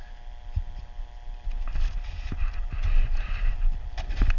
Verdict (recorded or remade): recorded